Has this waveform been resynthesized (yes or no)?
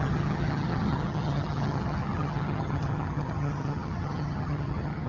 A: yes